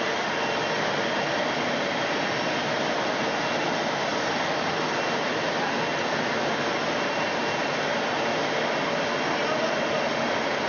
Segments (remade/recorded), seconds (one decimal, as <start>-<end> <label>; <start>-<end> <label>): 0.0-10.7 recorded